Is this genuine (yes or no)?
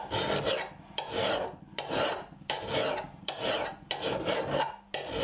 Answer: yes